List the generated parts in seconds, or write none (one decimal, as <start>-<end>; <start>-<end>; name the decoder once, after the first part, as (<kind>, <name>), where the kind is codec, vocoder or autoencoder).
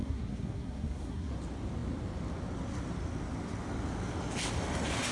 0.0-1.3 (codec, SNAC)